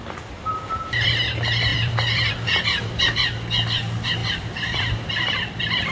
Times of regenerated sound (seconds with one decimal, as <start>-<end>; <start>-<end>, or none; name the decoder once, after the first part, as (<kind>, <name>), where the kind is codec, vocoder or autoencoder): 1.7-2.3 (vocoder, BigVGAN v2); 4.2-5.9